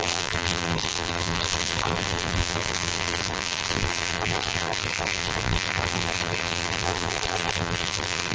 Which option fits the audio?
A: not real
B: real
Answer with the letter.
A